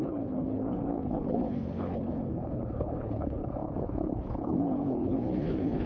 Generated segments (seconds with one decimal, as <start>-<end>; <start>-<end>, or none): 0.0-5.9